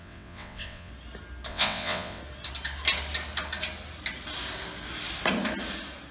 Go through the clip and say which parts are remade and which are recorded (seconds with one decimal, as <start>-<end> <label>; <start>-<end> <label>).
0.0-0.9 remade; 0.9-1.5 recorded; 1.5-2.2 remade; 2.2-6.1 recorded